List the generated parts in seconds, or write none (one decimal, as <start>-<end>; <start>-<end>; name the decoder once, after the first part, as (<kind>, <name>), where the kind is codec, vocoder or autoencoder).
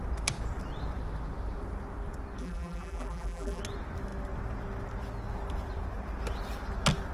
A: 2.4-3.6 (vocoder, BigVGAN v2)